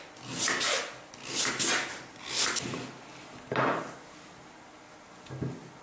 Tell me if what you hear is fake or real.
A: real